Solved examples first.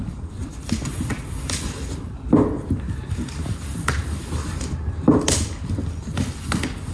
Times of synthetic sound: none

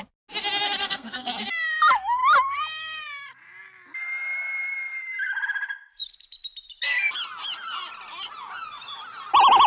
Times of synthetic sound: 0.8-1.3 (codec, SNAC)

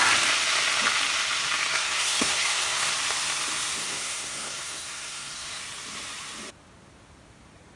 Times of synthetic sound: 1.7-2.9 (codec, SNAC); 3.8-5.6

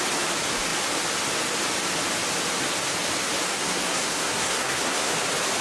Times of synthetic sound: 3.5-5.1 (codec, SNAC)